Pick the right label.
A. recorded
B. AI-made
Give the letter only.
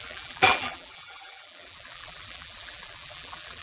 B